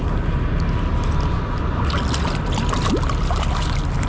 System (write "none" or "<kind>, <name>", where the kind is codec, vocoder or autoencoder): none